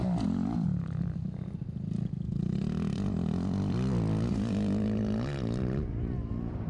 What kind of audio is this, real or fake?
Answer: real